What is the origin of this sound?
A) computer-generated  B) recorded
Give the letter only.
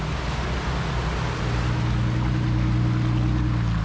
B